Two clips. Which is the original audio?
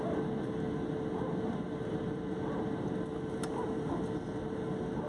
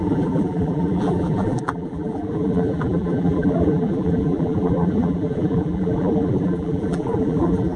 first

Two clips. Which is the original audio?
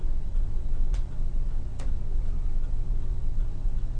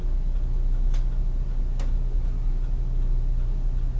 second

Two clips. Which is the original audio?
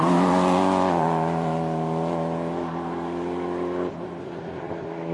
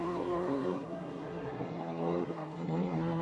first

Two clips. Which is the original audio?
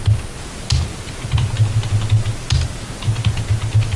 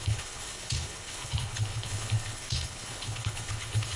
first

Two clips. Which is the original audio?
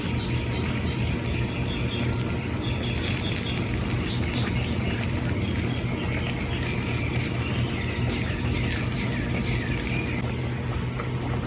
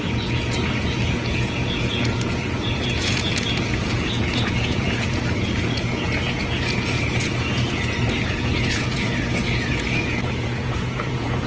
first